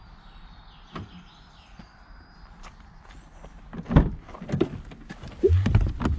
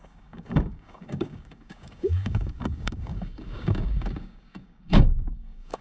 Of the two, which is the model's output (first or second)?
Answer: second